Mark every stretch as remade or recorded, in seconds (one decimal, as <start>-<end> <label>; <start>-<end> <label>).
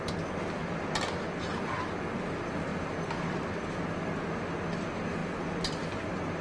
0.0-0.6 recorded; 0.6-1.2 remade; 1.2-2.7 recorded; 2.7-3.7 remade; 3.7-6.4 recorded